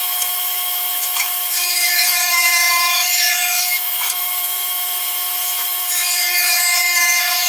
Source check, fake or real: fake